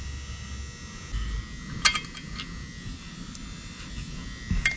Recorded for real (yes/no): yes